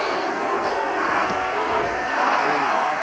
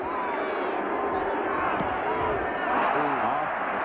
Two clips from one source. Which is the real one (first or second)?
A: second